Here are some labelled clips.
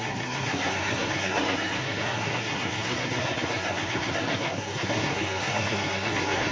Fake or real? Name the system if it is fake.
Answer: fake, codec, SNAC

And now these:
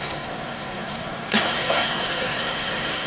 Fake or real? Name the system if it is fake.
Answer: fake, codec, SNAC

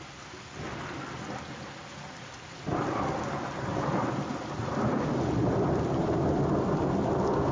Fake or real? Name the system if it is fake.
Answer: real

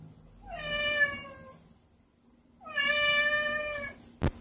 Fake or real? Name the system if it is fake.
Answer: real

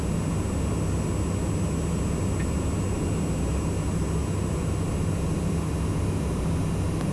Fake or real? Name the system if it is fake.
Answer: real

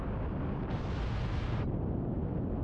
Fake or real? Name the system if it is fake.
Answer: real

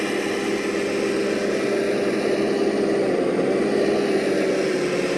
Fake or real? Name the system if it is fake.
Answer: real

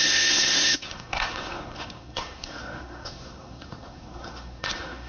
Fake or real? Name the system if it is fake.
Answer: fake, codec, SNAC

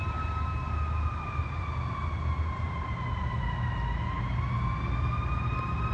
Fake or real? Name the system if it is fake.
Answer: real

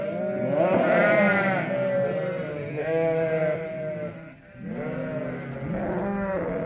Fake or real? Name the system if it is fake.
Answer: real